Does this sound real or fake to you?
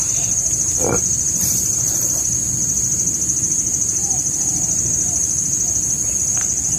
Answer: real